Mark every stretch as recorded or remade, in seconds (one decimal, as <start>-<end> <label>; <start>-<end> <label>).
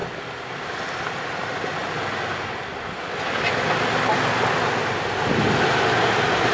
0.0-6.5 recorded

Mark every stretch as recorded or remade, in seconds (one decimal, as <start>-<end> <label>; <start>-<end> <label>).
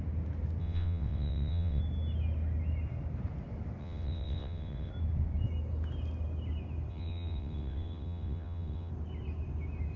0.0-0.6 recorded; 0.6-1.8 remade; 1.8-3.8 recorded; 3.8-4.9 remade; 4.9-6.9 recorded; 6.9-8.9 remade; 8.9-10.0 recorded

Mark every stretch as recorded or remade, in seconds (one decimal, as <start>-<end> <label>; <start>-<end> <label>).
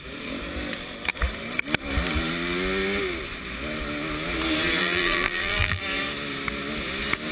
0.0-4.8 recorded; 4.8-5.8 remade; 5.8-7.3 recorded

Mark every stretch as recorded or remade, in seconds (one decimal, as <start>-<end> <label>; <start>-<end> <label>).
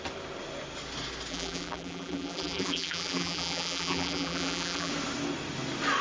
0.0-1.3 recorded; 1.3-4.9 remade; 4.9-6.0 recorded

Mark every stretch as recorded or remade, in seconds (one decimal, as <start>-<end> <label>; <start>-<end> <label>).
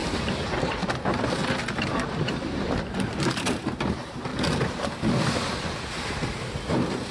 0.0-0.6 recorded; 0.6-1.4 remade; 1.4-2.3 recorded; 2.3-4.3 remade; 4.3-7.1 recorded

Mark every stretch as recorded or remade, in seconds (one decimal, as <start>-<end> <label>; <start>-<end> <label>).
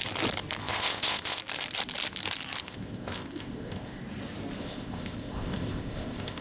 0.0-0.6 recorded; 0.6-1.4 remade; 1.4-2.6 recorded; 2.6-4.0 remade; 4.0-4.6 recorded; 4.6-6.4 remade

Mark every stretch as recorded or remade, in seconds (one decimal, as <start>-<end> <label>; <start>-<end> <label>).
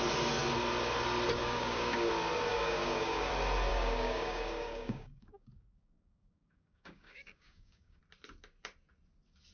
0.0-1.4 recorded; 1.4-2.1 remade; 2.1-2.5 recorded; 2.5-3.3 remade; 3.3-3.7 recorded; 3.7-8.0 remade; 8.0-9.5 recorded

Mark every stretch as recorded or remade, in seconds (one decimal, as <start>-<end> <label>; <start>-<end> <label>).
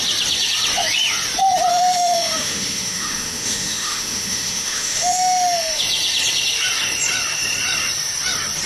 0.0-1.7 recorded; 1.7-5.8 remade; 5.8-8.7 recorded